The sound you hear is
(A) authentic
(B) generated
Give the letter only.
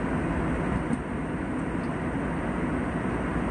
A